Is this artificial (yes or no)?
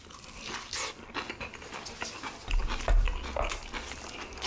no